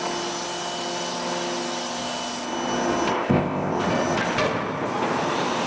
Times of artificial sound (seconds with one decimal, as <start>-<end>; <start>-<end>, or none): 3.1-3.8